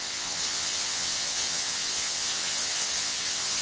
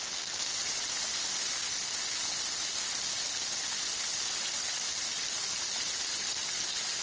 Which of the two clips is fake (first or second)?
first